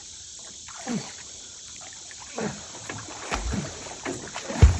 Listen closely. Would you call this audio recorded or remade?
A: remade